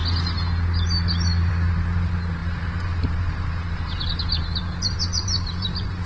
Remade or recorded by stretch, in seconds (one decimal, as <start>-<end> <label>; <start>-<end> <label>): 0.0-1.5 recorded; 1.5-6.1 remade